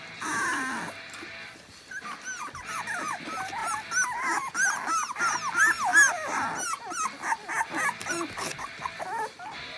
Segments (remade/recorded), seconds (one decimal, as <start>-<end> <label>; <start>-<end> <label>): 0.0-9.8 recorded